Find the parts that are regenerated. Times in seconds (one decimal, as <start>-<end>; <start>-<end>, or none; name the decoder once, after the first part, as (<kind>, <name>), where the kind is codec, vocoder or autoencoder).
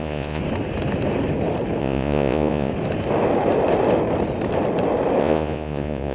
0.0-0.4 (vocoder, Vocos); 1.8-2.7; 5.2-6.1